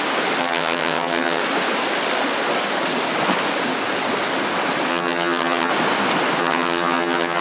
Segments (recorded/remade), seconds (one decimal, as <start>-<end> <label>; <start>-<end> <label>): 0.0-0.4 recorded; 0.4-1.4 remade; 1.4-4.9 recorded; 4.9-5.7 remade; 5.7-6.4 recorded; 6.4-7.4 remade